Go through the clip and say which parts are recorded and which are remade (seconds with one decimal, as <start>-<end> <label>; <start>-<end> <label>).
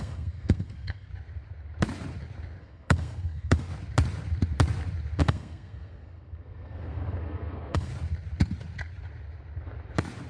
0.0-1.1 remade; 1.1-2.6 recorded; 2.6-3.7 remade; 3.7-5.2 recorded; 5.2-7.9 remade; 7.9-10.3 recorded